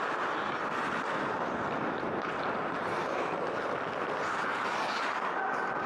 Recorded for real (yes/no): yes